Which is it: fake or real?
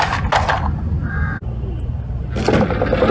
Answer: real